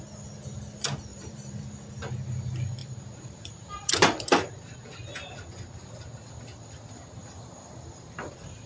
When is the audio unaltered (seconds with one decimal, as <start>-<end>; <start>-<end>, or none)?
0.0-1.1; 1.6-2.8; 3.9-7.2; 7.9-8.7